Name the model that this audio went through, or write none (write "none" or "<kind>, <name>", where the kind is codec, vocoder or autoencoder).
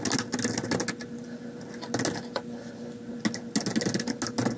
none